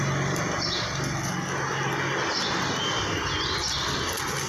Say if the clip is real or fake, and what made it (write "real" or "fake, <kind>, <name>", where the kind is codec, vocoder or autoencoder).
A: real